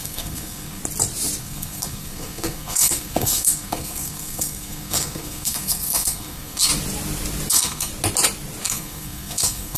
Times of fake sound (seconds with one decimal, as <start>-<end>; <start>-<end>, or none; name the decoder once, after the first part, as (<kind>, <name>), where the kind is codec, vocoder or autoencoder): 0.0-0.8 (codec, SNAC); 1.4-6.7; 7.5-7.9; 8.6-9.8